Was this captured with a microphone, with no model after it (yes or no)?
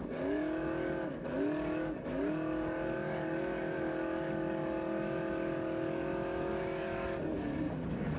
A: no